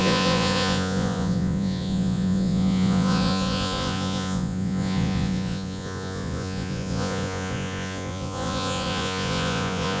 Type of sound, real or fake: fake